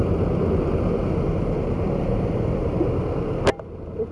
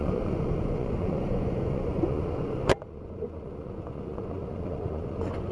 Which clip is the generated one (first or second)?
second